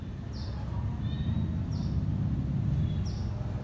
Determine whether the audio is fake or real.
real